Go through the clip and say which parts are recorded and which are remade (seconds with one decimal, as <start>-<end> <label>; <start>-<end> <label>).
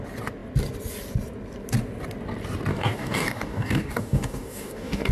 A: 0.0-2.7 recorded; 2.7-5.1 remade